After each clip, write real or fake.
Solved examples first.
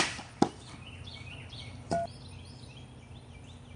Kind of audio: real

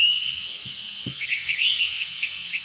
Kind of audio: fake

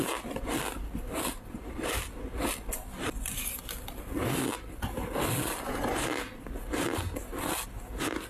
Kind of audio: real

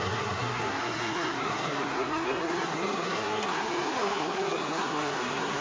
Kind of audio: fake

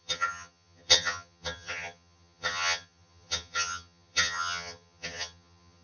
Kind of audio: fake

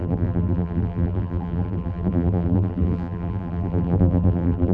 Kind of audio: fake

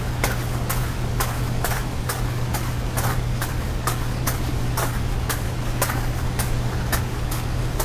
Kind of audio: fake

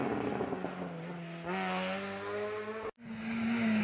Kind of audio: real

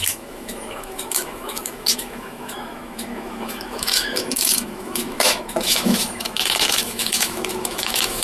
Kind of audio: fake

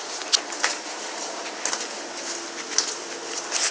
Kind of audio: real